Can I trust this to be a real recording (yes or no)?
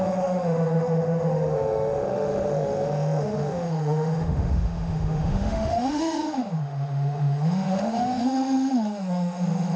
no